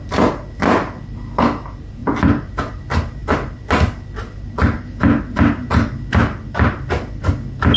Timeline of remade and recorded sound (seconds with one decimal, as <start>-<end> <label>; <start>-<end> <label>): 0.0-2.0 recorded; 2.0-2.6 remade; 2.6-7.8 recorded